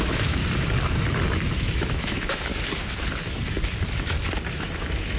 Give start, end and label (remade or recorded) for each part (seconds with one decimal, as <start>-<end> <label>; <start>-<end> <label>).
0.0-0.4 remade; 0.4-1.6 recorded; 1.6-2.5 remade; 2.5-4.5 recorded; 4.5-5.2 remade